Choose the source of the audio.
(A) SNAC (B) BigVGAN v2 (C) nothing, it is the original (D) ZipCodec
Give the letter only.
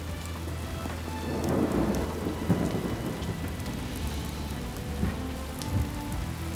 C